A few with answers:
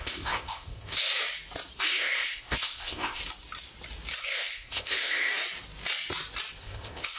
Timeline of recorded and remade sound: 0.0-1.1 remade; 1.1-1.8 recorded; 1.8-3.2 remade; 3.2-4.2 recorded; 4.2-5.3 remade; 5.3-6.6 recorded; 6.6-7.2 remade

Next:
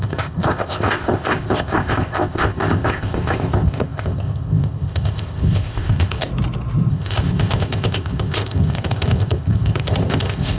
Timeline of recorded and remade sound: 0.0-6.3 remade; 6.3-6.9 recorded; 6.9-10.6 remade

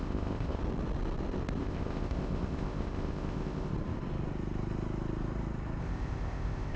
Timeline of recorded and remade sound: 0.0-0.6 remade; 0.6-1.6 recorded; 1.6-3.7 remade; 3.7-5.8 recorded; 5.8-6.8 remade